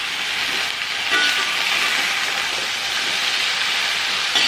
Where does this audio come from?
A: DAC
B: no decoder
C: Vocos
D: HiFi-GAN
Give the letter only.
B